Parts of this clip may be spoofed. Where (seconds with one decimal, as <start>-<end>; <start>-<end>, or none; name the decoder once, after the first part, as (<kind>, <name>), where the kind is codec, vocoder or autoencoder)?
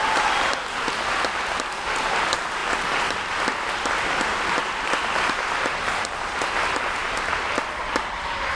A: 2.6-6.5 (vocoder, BigVGAN v2); 7.0-7.8